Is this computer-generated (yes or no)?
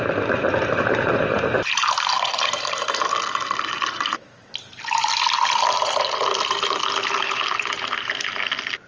no